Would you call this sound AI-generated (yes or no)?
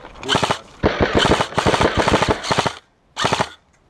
no